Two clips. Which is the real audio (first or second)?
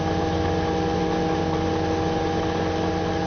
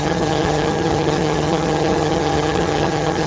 first